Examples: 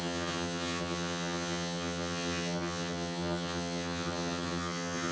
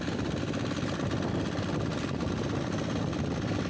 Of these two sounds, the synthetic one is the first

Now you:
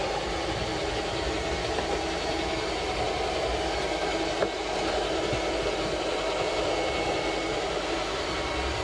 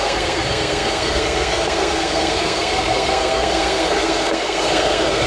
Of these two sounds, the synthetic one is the second